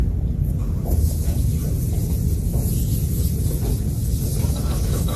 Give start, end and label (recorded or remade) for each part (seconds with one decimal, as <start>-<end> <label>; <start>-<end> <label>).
0.0-1.0 recorded; 1.0-1.5 remade; 1.5-4.6 recorded; 4.6-5.2 remade